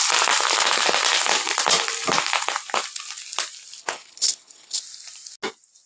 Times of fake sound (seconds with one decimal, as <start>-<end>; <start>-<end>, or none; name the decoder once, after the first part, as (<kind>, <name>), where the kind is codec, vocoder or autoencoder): 3.8-4.8 (codec, HILCodec)